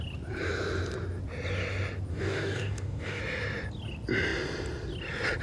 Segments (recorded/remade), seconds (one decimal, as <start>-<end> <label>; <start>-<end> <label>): 0.0-2.1 recorded; 2.1-3.2 remade; 3.2-5.4 recorded